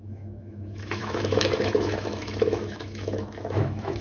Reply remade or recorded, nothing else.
remade